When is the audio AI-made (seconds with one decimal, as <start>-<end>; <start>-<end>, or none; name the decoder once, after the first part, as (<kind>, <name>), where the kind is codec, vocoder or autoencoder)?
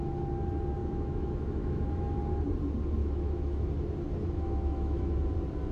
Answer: 0.8-2.2 (autoencoder, DAC-VAE); 3.0-3.7; 4.2-5.1